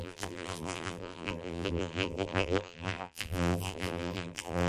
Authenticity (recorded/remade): remade